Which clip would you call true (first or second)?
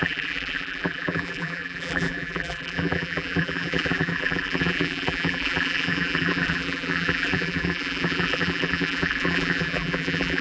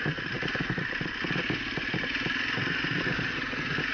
second